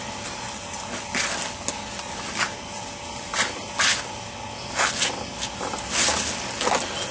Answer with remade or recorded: recorded